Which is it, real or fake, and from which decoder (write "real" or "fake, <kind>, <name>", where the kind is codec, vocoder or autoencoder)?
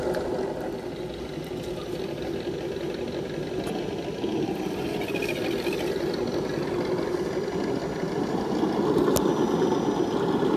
real